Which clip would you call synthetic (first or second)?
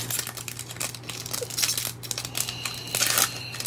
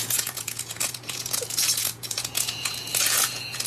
second